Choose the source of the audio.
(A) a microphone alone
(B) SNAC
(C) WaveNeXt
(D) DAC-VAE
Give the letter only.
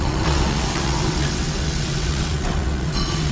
C